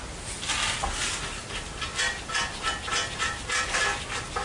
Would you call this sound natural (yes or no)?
yes